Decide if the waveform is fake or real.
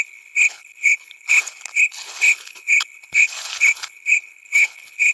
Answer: fake